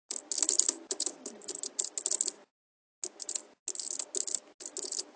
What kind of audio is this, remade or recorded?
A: recorded